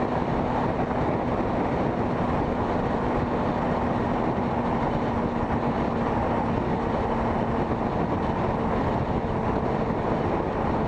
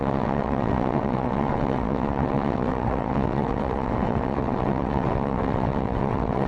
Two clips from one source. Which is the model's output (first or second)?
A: second